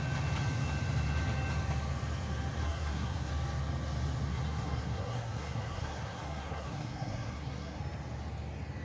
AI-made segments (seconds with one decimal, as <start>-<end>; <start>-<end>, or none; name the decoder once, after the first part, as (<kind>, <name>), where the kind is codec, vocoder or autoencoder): 2.6-3.3 (codec, SNAC); 4.3-7.8